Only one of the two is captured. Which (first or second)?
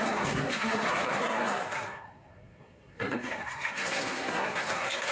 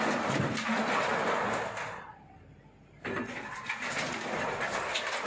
second